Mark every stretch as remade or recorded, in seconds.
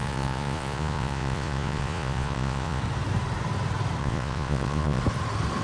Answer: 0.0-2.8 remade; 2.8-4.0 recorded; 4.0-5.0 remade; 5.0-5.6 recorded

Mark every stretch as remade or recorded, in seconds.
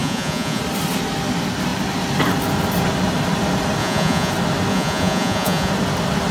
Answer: 0.0-0.6 remade; 0.6-3.8 recorded; 3.8-4.3 remade; 4.3-4.7 recorded; 4.7-5.7 remade; 5.7-6.3 recorded